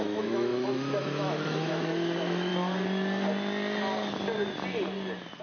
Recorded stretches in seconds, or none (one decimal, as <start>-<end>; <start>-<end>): 2.5-5.4